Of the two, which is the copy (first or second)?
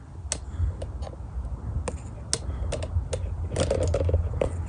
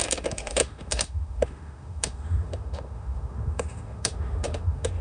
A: second